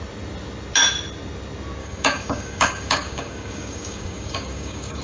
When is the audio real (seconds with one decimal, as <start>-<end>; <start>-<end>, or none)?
0.0-1.8